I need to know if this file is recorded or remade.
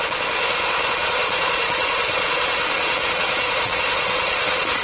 remade